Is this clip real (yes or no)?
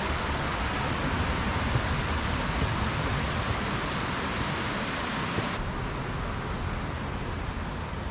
yes